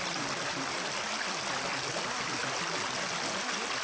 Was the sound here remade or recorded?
recorded